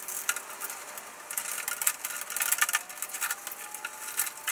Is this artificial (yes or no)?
no